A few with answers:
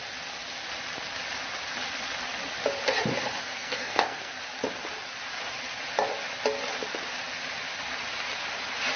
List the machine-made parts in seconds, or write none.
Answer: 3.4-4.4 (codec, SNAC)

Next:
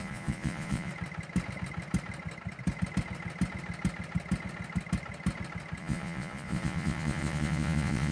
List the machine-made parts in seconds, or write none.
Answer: 0.0-0.9 (vocoder, Vocos); 5.8-8.1

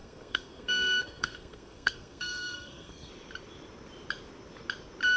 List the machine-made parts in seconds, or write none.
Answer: 0.0-3.1 (codec, SNAC)

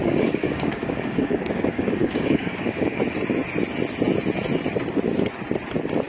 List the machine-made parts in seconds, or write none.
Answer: 0.0-3.0 (codec, DAC)